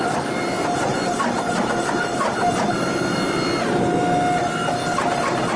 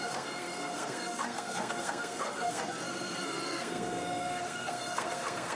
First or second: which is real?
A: first